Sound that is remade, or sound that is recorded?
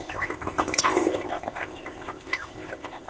remade